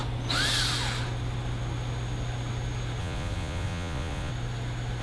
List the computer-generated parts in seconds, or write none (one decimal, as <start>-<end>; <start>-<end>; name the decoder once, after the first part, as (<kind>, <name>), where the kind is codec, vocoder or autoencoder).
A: 3.0-4.3 (vocoder, Vocos)